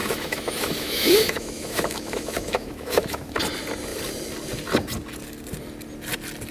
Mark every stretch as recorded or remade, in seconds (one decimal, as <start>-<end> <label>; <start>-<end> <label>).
0.0-3.4 remade; 3.4-6.5 recorded